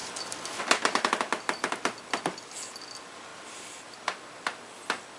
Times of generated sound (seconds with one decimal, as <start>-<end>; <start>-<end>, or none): 3.3-3.9